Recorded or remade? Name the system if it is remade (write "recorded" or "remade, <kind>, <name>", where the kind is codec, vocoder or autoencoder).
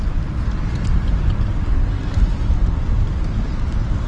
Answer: recorded